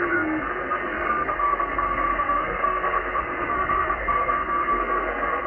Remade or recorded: remade